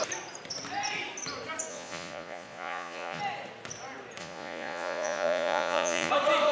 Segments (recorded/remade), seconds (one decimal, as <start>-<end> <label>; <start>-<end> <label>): 0.0-1.7 recorded; 1.7-3.2 remade; 3.2-4.2 recorded; 4.2-6.1 remade; 6.1-6.5 recorded